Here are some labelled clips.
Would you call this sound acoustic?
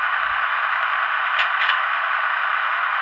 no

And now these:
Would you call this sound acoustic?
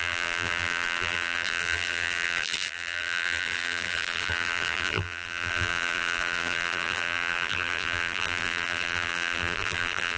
no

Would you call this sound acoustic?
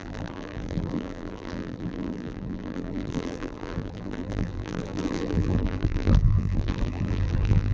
no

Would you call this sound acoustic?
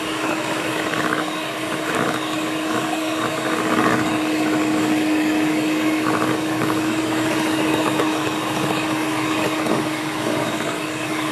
no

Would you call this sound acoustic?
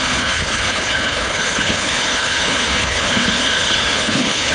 no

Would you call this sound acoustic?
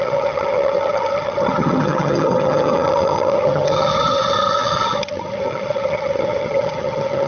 no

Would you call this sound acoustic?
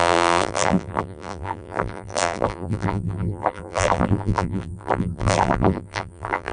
no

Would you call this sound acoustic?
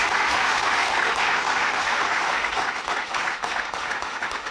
no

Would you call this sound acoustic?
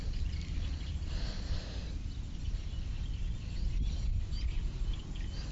yes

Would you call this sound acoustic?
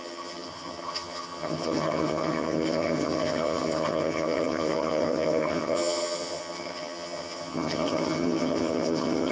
no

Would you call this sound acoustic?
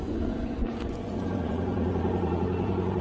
no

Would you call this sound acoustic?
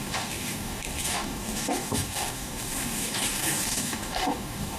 no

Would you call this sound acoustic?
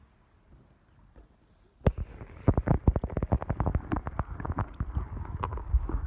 yes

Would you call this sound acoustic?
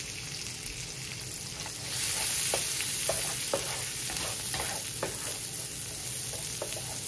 yes